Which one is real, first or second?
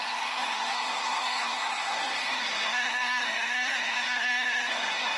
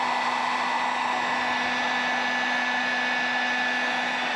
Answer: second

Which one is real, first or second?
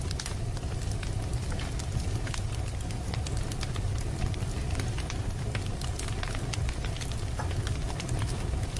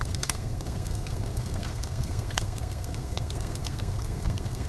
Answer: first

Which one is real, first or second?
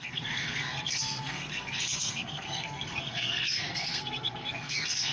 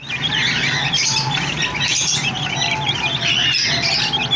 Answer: second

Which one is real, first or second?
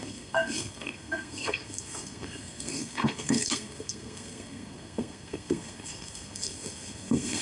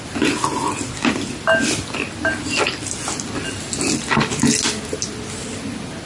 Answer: second